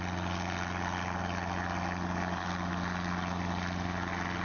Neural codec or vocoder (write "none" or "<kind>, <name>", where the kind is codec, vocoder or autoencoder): none